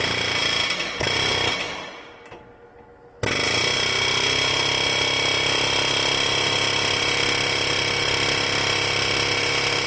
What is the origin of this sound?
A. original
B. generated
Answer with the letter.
A